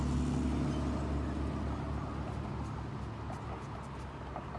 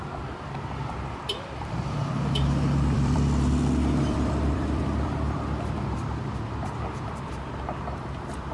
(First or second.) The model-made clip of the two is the second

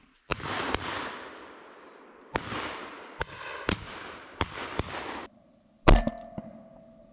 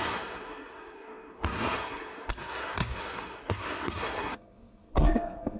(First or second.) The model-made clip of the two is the second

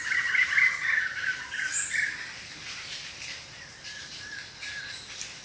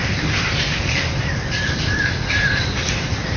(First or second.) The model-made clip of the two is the second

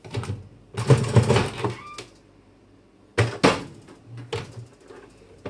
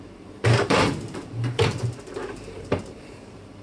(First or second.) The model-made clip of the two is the second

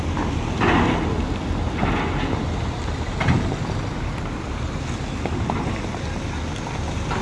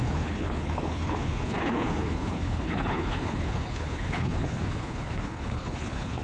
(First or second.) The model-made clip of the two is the second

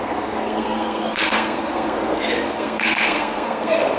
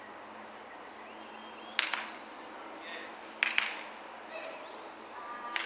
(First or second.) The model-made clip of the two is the first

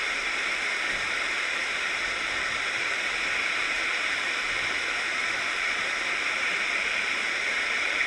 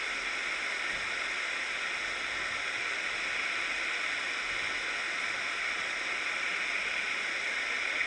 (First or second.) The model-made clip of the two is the first